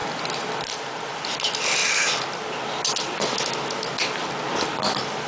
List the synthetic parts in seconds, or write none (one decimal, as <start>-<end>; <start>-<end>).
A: none